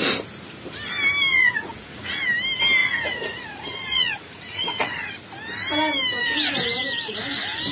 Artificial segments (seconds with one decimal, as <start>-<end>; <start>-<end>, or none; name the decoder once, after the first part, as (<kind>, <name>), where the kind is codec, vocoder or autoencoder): 1.3-2.2 (vocoder, Vocos); 2.8-5.1